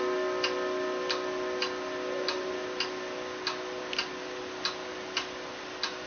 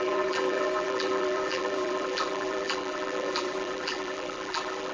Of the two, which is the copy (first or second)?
second